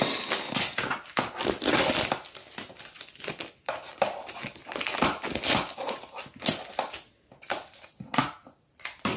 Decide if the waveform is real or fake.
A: real